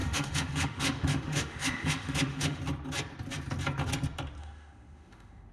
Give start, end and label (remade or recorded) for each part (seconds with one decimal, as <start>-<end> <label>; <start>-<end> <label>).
0.0-2.6 remade; 2.6-4.4 recorded; 4.4-5.5 remade